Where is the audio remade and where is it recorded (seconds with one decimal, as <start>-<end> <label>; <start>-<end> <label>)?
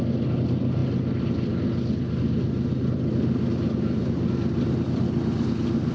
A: 0.0-5.9 recorded